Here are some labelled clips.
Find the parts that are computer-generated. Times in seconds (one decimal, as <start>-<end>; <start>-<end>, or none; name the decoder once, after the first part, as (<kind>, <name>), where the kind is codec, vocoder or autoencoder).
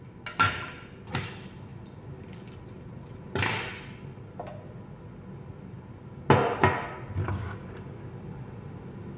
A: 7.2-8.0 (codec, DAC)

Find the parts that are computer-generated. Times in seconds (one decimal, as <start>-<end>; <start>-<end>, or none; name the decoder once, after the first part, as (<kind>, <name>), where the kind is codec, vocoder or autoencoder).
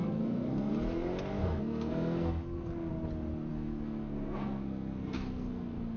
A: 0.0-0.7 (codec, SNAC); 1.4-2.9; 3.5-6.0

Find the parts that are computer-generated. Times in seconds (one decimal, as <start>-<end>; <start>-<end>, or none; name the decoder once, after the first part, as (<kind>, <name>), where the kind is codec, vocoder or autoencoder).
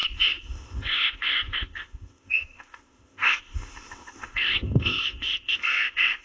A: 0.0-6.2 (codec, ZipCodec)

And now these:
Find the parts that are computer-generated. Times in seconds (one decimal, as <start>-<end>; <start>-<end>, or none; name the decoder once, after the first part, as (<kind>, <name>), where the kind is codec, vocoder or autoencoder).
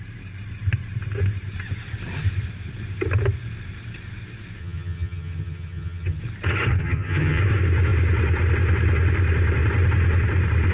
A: 4.6-6.2 (vocoder, HiFi-GAN); 6.8-7.4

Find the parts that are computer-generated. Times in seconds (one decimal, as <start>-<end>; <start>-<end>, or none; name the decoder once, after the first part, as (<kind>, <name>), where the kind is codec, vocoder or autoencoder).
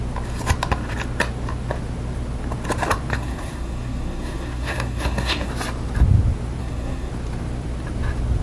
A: 3.1-5.5 (codec, SNAC); 6.6-7.1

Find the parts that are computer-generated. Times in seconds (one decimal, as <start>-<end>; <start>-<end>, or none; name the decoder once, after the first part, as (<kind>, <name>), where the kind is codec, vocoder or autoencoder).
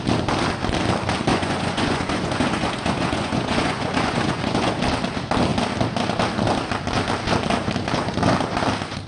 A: 1.3-4.7 (vocoder, Vocos)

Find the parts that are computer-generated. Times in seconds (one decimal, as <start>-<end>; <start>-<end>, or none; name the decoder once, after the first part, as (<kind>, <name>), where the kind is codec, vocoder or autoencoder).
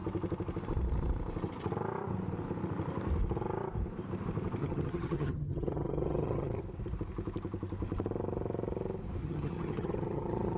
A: 4.6-6.6 (vocoder, HiFi-GAN); 9.2-10.6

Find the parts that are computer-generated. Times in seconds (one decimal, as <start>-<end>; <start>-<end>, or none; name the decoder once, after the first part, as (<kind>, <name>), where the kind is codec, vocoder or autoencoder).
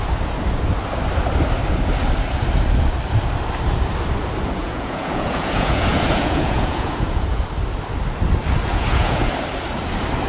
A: 4.6-7.4 (vocoder, Vocos); 8.7-9.3